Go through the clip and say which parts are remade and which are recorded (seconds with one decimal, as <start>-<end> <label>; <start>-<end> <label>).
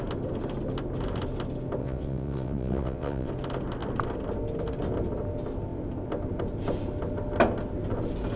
0.0-1.8 recorded; 1.8-3.3 remade; 3.3-8.4 recorded